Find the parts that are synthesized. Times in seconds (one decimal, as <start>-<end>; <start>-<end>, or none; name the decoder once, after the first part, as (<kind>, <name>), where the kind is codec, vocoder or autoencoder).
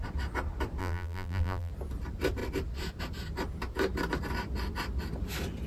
0.8-1.7 (vocoder, BigVGAN v2)